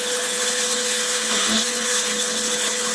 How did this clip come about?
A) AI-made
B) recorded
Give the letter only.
A